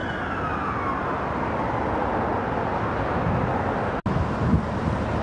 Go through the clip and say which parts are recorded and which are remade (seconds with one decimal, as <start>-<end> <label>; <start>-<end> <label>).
0.0-5.2 recorded